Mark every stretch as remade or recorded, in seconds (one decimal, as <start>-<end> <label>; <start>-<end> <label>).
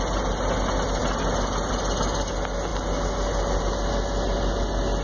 0.0-5.0 recorded